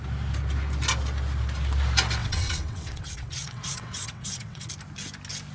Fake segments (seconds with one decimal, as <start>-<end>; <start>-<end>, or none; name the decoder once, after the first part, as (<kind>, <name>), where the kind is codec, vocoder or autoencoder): 2.2-4.7 (vocoder, WaveNeXt)